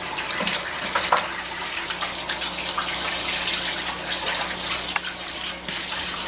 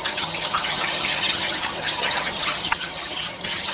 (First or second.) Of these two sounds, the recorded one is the first